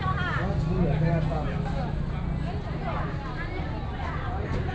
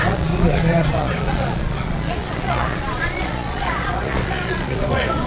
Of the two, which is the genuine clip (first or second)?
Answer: first